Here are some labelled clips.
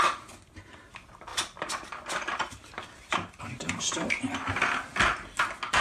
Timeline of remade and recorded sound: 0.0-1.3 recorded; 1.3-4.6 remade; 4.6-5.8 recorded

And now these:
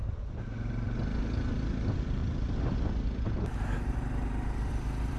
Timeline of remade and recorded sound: 0.0-5.2 recorded

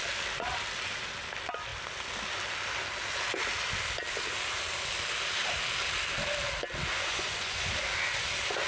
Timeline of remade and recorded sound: 0.0-6.9 recorded; 6.9-7.7 remade; 7.7-8.7 recorded

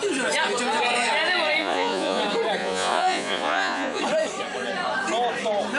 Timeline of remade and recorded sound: 0.0-1.6 recorded; 1.6-2.2 remade; 2.2-2.6 recorded; 2.6-4.0 remade; 4.0-5.8 recorded

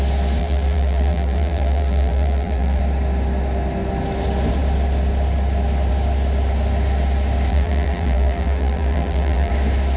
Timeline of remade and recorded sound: 0.0-0.4 recorded; 0.4-2.8 remade; 2.8-7.5 recorded; 7.5-9.5 remade; 9.5-10.0 recorded